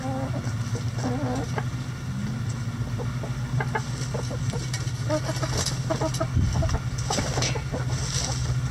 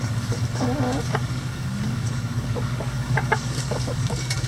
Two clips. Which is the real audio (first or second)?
first